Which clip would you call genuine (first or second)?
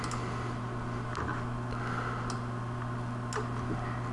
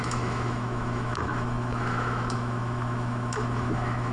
first